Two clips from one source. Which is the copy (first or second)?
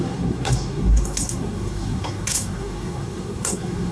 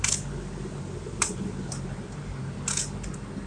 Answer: first